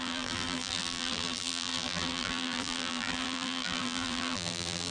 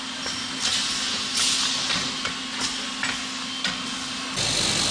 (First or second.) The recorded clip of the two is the second